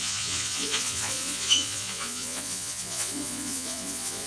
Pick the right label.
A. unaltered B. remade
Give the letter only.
B